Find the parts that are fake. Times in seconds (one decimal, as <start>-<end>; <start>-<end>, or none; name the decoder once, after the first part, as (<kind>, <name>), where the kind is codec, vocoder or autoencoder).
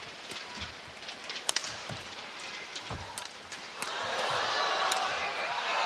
1.6-4.5 (vocoder, BigVGAN v2)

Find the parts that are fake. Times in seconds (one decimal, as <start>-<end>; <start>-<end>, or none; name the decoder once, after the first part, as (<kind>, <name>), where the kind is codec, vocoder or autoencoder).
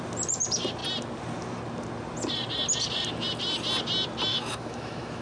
4.3-5.2 (autoencoder, DAC-VAE)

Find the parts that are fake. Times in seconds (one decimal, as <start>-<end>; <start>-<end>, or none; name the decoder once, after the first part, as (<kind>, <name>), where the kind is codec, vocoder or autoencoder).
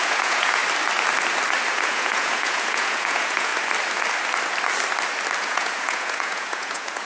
0.0-0.6 (vocoder, Vocos); 1.7-3.5; 5.4-7.0